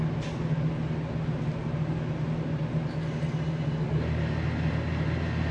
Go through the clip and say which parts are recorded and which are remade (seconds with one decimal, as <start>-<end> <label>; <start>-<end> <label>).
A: 0.0-5.5 recorded